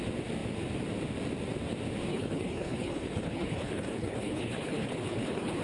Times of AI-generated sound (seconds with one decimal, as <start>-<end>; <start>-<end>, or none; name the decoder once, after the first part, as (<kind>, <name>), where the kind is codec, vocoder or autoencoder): 2.1-5.6 (codec, HILCodec)